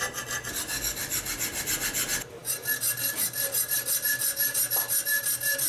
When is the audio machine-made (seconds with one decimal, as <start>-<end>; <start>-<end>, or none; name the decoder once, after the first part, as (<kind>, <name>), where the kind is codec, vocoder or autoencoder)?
none

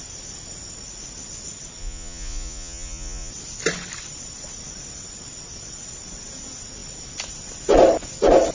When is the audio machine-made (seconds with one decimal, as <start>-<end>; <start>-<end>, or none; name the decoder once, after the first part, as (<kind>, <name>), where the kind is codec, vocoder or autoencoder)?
1.8-3.3 (vocoder, Vocos)

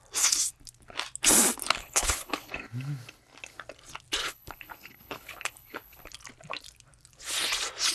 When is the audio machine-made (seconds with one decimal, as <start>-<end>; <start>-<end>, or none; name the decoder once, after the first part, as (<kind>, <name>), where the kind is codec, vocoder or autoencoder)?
1.8-2.5 (codec, HILCodec); 4.2-6.1

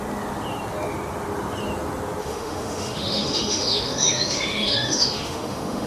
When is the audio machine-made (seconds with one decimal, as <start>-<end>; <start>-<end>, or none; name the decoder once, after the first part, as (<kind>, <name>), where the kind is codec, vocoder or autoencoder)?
2.2-5.9 (autoencoder, DAC-VAE)

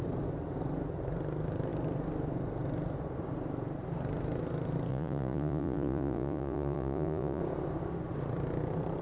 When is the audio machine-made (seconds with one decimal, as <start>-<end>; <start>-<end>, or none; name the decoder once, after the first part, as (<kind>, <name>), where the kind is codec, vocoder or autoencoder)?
4.9-7.4 (vocoder, Vocos)

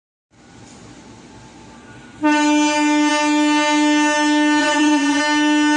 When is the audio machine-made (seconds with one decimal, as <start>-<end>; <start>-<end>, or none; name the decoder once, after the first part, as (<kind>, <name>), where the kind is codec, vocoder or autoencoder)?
4.6-5.2 (vocoder, Vocos)